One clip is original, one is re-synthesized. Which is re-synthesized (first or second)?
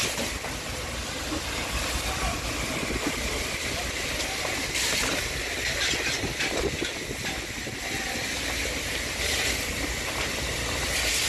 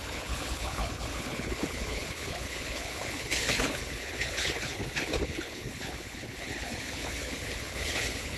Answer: second